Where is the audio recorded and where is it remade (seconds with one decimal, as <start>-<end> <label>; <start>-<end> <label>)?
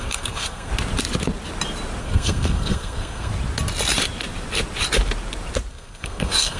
0.0-0.7 remade; 0.7-2.0 recorded; 2.0-3.3 remade; 3.3-5.7 recorded; 5.7-6.6 remade